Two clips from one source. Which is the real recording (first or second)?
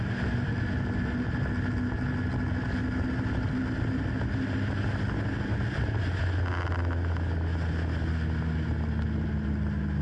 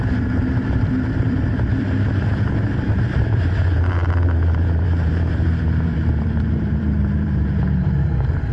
first